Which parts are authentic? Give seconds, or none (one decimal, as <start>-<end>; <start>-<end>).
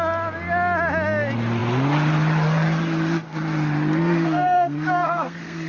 0.0-4.0